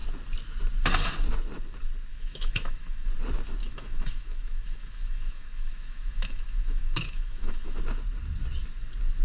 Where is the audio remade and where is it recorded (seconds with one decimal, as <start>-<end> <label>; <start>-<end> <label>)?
0.0-2.1 recorded; 2.1-3.1 remade; 3.1-3.6 recorded; 3.6-7.8 remade; 7.8-9.2 recorded